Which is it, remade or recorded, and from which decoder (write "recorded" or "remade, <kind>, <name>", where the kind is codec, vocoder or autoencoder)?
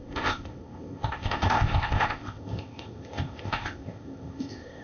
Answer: remade, codec, ZipCodec